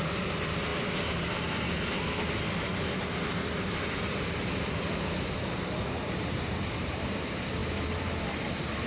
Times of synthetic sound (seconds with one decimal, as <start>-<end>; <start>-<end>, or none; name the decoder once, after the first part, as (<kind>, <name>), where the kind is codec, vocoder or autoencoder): 0.0-0.7 (vocoder, BigVGAN v2); 5.3-8.9

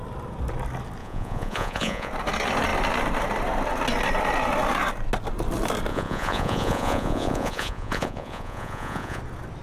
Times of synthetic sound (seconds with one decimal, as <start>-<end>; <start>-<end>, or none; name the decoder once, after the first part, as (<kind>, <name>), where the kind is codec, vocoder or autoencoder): 1.0-2.1 (vocoder, Vocos); 5.9-9.2

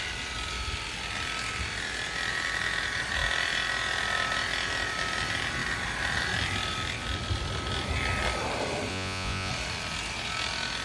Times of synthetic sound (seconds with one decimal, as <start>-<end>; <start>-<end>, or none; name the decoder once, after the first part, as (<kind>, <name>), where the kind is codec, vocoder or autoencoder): 8.9-9.5 (vocoder, Vocos)